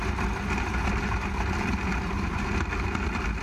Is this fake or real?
real